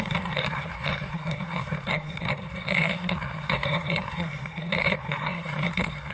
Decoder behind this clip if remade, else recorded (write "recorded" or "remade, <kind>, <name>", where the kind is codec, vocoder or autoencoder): remade, codec, SNAC